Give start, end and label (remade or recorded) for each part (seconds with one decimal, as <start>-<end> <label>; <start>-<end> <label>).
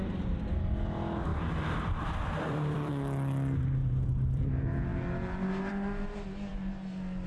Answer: 0.0-1.3 recorded; 1.3-2.9 remade; 2.9-3.8 recorded; 3.8-4.5 remade; 4.5-7.3 recorded